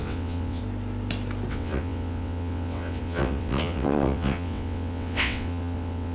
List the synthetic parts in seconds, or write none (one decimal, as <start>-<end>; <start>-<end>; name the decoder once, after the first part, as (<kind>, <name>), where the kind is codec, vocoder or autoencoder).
0.0-0.6 (vocoder, WaveNeXt); 1.5-6.1